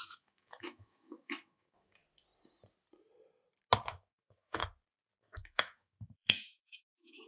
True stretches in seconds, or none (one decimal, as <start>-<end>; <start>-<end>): 2.0-3.9; 4.6-5.2